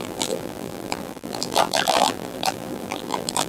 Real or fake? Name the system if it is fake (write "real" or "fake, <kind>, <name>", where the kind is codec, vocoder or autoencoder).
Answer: fake, vocoder, BigVGAN v2